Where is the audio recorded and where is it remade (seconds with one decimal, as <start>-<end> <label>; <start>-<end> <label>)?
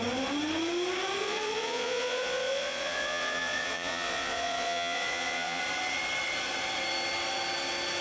0.0-1.2 recorded; 1.2-5.6 remade; 5.6-8.0 recorded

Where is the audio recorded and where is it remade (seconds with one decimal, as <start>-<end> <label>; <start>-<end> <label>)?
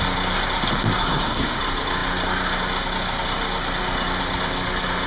0.0-1.0 recorded; 1.0-1.6 remade; 1.6-5.1 recorded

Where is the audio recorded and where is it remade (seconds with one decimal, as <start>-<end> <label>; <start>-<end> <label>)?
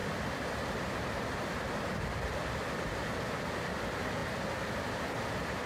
0.0-5.7 recorded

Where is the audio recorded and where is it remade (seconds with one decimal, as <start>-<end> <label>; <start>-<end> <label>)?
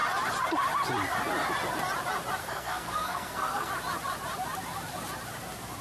0.0-2.4 recorded; 2.4-3.7 remade; 3.7-5.8 recorded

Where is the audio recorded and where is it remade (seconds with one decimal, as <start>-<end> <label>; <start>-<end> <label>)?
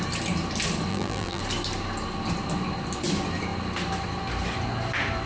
0.0-0.9 recorded; 0.9-1.4 remade; 1.4-5.3 recorded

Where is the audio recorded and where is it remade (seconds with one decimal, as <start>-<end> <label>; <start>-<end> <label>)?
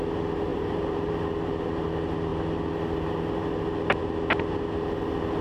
0.0-0.5 recorded; 0.5-1.1 remade; 1.1-5.4 recorded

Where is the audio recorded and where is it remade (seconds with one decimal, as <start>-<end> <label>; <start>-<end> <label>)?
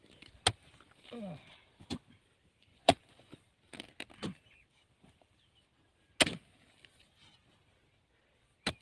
0.0-2.7 recorded; 2.7-3.3 remade; 3.3-8.8 recorded